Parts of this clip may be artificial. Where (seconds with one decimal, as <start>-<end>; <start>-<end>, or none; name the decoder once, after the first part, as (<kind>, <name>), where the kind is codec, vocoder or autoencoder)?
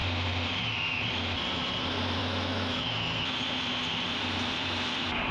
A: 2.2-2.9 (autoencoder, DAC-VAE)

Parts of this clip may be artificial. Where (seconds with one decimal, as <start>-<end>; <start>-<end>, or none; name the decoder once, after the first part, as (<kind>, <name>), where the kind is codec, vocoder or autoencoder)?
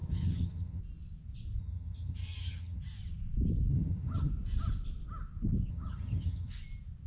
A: 0.0-0.8 (vocoder, HiFi-GAN); 1.6-2.8; 3.7-4.3; 5.7-6.5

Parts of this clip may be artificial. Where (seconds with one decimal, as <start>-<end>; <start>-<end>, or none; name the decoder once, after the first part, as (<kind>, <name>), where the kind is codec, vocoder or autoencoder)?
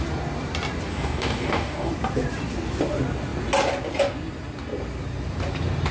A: 0.9-1.9 (codec, DAC)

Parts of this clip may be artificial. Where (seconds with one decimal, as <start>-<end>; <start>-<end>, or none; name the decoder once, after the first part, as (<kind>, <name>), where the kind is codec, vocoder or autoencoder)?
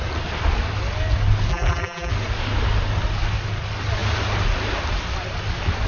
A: 1.5-2.1 (vocoder, BigVGAN v2)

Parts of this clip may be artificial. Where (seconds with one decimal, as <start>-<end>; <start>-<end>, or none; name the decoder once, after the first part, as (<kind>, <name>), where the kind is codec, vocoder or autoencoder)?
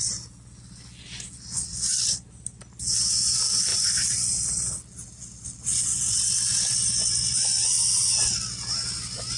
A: none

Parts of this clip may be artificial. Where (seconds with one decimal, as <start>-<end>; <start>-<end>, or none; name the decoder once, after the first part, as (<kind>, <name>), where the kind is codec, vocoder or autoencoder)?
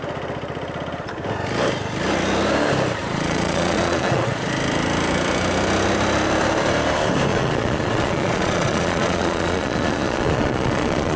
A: 3.0-4.5 (vocoder, Vocos); 7.3-11.2